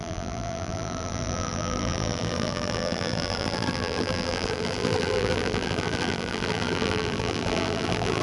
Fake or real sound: fake